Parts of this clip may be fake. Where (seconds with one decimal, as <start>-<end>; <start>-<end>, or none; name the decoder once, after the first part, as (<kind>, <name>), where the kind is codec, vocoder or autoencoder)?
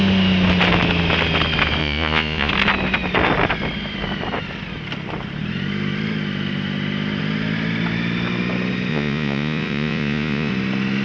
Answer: 1.8-2.5 (vocoder, Vocos); 8.9-10.5